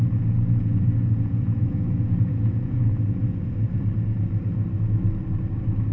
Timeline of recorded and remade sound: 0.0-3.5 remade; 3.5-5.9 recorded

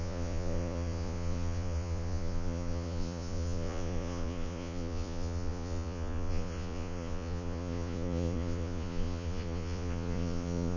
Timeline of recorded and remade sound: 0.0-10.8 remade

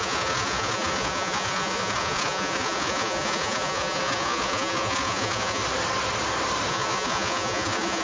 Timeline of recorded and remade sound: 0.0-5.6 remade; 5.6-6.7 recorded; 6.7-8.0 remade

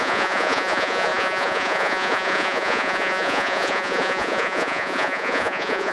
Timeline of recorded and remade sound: 0.0-5.9 remade